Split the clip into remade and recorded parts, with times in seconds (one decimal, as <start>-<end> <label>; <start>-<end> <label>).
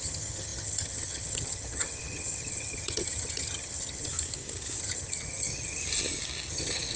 0.0-4.1 remade; 4.1-4.8 recorded; 4.8-5.8 remade; 5.8-6.5 recorded; 6.5-7.0 remade